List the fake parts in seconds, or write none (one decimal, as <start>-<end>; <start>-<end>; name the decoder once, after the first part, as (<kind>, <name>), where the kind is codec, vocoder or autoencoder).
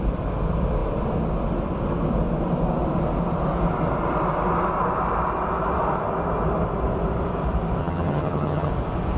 7.8-8.7 (vocoder, HiFi-GAN)